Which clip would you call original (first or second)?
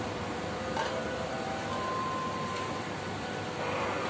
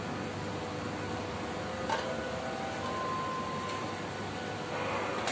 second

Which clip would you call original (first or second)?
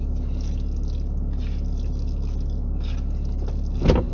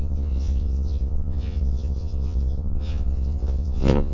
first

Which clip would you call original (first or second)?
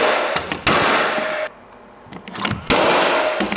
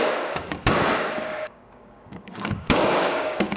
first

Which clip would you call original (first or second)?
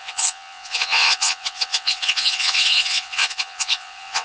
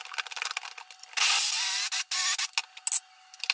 second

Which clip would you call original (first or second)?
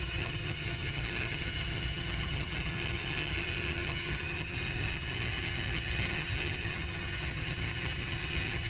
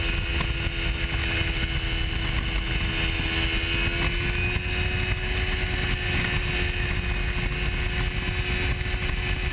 second